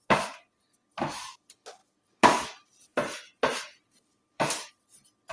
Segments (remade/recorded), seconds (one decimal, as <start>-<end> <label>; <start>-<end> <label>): 0.0-1.8 recorded; 1.8-4.7 remade; 4.7-5.3 recorded